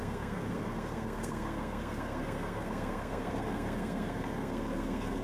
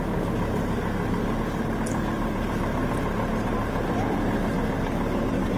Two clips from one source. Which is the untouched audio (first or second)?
second